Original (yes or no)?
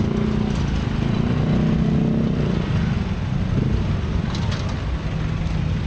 yes